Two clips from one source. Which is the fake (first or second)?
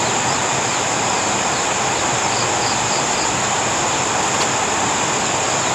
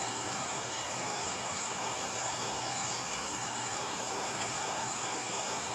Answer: second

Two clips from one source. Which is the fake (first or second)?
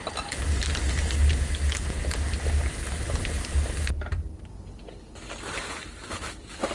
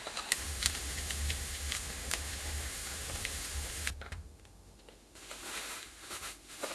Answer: second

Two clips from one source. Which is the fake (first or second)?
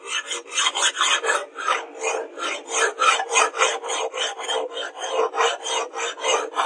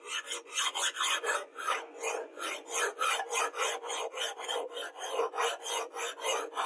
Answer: second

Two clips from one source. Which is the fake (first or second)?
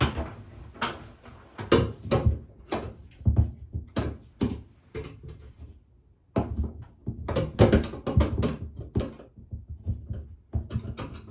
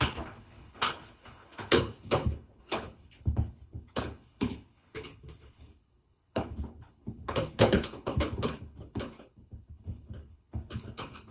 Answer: second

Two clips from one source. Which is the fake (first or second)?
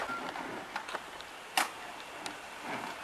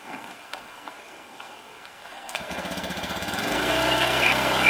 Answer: second